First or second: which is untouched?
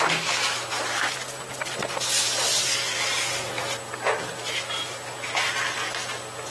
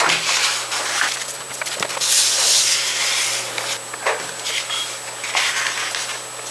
second